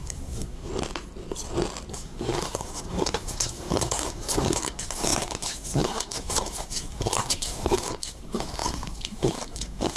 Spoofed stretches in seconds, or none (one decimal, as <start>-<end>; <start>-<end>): 0.0-0.7; 1.9-10.0